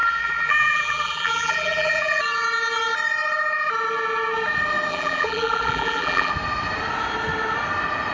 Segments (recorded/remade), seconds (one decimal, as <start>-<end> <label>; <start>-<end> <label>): 0.0-2.2 remade; 2.2-4.9 recorded; 4.9-6.3 remade; 6.3-8.1 recorded